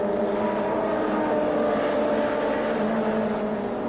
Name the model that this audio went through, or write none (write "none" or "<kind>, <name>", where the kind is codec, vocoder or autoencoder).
none